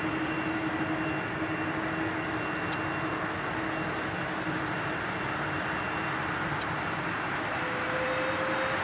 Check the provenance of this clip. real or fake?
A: real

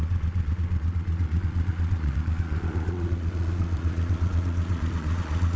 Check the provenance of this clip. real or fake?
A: fake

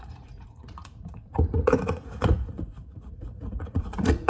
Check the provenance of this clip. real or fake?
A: fake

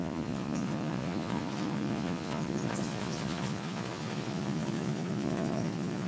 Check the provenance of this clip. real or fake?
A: fake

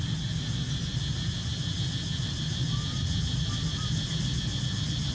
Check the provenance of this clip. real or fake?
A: real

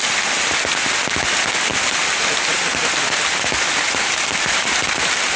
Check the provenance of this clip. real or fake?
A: real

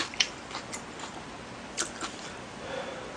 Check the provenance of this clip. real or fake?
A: real